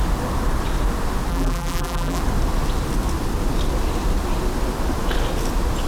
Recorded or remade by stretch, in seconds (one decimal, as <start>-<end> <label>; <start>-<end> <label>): 0.0-1.3 recorded; 1.3-2.2 remade; 2.2-5.9 recorded